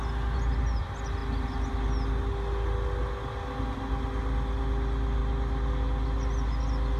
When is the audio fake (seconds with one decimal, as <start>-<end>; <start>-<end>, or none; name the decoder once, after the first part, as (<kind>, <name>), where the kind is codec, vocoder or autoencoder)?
none